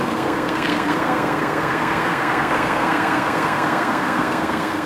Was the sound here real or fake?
fake